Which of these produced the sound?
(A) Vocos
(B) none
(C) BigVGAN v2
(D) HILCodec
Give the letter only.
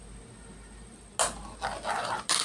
B